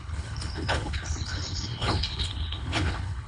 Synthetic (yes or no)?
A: yes